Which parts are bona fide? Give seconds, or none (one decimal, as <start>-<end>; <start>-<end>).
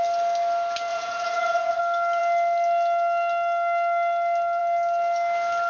0.0-0.9; 1.8-5.7